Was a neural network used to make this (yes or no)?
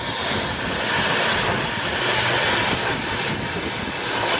no